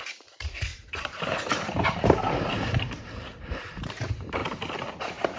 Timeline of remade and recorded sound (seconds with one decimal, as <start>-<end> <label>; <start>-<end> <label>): 0.0-4.4 remade; 4.4-4.9 recorded; 4.9-5.4 remade